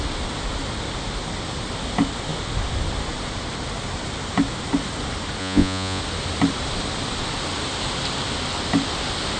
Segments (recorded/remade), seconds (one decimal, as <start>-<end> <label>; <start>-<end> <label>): 0.0-5.4 recorded; 5.4-6.0 remade; 6.0-9.4 recorded